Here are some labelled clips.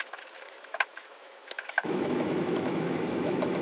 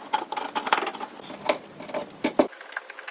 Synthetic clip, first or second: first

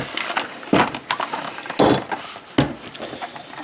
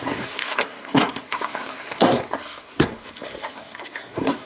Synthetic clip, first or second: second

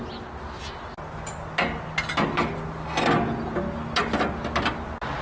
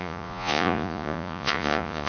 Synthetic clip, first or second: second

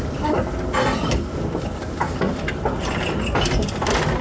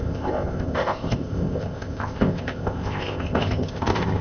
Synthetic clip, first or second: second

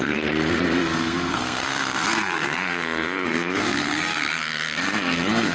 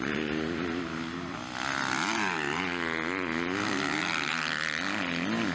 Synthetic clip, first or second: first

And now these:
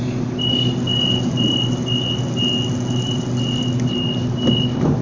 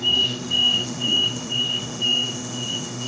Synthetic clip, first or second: second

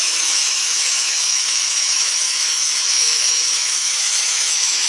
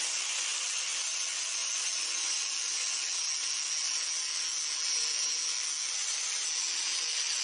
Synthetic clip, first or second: first